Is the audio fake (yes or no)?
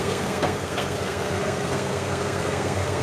yes